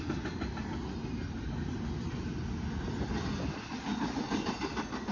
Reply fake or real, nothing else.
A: real